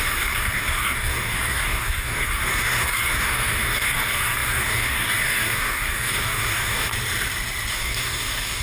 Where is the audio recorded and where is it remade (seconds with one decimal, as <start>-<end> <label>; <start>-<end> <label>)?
0.0-6.9 remade; 6.9-7.7 recorded; 7.7-8.6 remade